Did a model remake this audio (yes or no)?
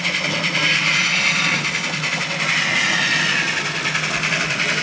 no